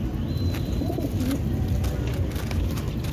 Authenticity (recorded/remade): recorded